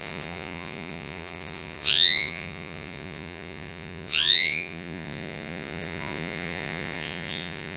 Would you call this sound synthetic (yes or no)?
yes